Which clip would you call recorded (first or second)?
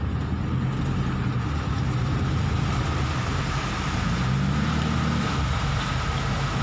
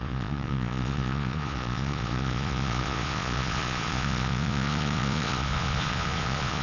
first